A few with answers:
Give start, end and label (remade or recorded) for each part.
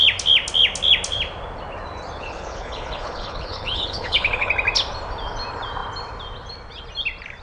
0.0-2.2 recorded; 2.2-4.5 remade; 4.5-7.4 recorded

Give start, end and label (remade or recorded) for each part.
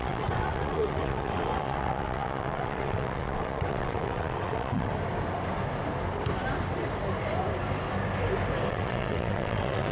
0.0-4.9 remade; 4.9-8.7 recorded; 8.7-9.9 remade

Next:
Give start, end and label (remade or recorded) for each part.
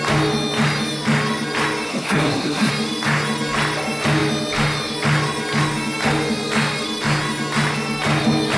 0.0-1.9 recorded; 1.9-2.7 remade; 2.7-8.6 recorded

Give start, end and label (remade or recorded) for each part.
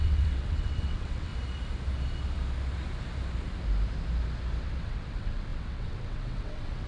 0.0-1.3 remade; 1.3-4.6 recorded; 4.6-6.9 remade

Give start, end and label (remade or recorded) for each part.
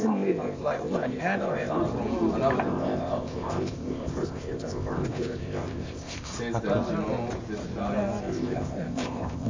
0.0-1.8 remade; 1.8-2.6 recorded; 2.6-6.3 remade; 6.3-8.2 recorded; 8.2-9.5 remade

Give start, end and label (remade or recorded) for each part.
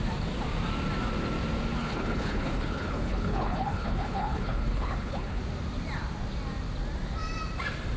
0.0-1.8 recorded; 1.8-5.4 remade; 5.4-8.0 recorded